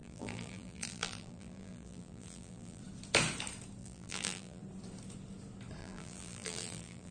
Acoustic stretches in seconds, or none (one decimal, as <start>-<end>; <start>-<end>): 2.8-3.8; 4.6-5.8